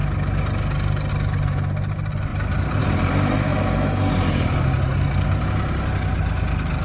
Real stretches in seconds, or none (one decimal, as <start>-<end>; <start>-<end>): 0.0-6.8